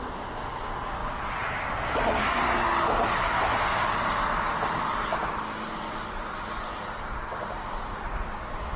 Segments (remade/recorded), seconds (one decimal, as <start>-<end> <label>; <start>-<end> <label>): 0.0-8.8 recorded